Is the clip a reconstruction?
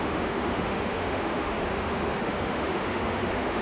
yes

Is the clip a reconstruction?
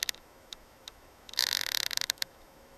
yes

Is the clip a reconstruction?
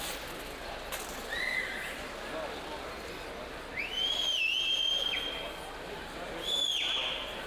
no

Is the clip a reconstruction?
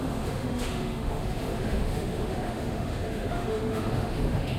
yes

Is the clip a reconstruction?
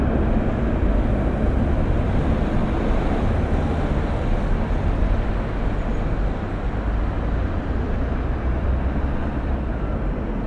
no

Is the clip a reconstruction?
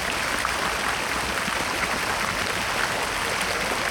no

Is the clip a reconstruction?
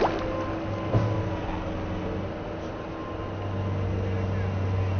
no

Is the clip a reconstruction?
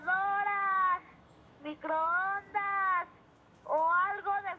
yes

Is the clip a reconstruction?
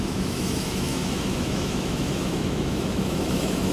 yes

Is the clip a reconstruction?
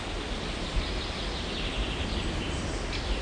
no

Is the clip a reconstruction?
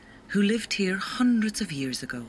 no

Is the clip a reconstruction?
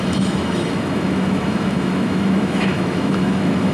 yes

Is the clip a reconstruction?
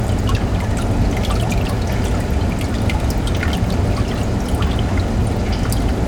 no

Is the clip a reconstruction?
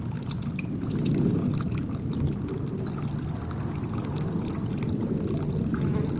no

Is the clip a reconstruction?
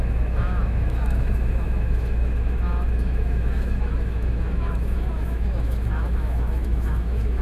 yes